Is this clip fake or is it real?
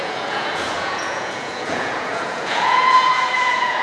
fake